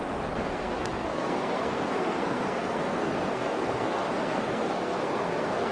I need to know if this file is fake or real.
fake